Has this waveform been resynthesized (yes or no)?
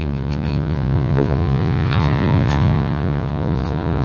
yes